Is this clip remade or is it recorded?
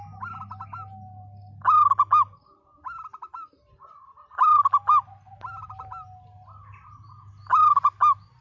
recorded